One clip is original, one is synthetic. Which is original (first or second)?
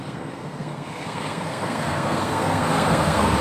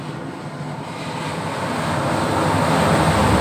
second